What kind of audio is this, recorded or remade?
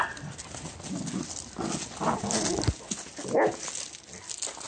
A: recorded